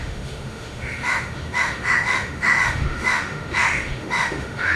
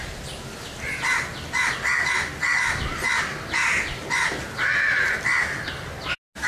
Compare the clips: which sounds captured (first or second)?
second